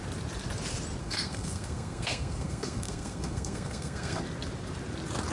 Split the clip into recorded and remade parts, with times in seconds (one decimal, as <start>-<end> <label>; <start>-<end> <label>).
0.0-1.0 recorded; 1.0-4.2 remade; 4.2-5.3 recorded